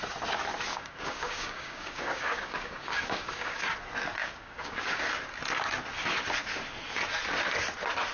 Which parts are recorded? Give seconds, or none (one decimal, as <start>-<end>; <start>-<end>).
0.0-0.7; 3.6-4.2; 5.0-8.1